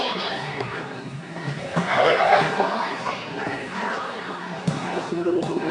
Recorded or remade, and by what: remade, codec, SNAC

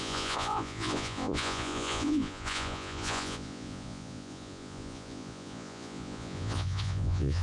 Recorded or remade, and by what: remade, vocoder, Vocos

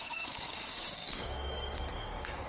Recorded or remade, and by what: remade, codec, DAC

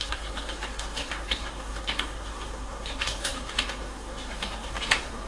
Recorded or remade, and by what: remade, codec, SNAC